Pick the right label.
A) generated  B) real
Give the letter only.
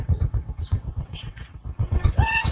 A